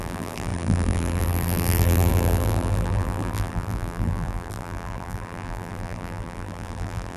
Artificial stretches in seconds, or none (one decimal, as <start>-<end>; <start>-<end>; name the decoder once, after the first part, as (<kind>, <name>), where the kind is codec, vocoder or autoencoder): 0.0-7.2 (vocoder, BigVGAN v2)